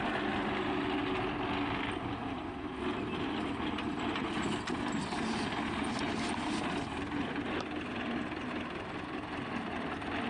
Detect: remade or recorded recorded